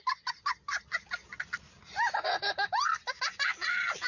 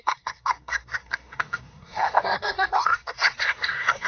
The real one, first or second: first